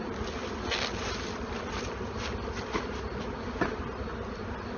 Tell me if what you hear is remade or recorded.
recorded